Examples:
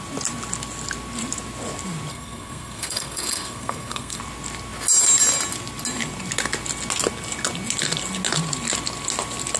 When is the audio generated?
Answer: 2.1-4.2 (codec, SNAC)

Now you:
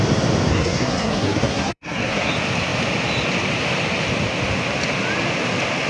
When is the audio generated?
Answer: 0.5-2.3 (codec, SNAC)

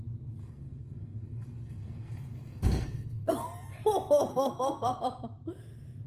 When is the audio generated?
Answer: 0.4-3.3 (codec, SNAC); 4.3-5.0